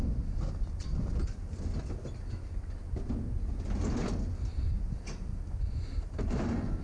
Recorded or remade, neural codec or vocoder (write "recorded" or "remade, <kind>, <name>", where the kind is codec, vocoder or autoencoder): recorded